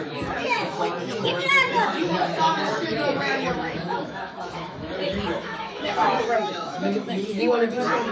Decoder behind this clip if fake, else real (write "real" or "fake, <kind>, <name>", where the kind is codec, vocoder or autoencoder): fake, autoencoder, DAC-VAE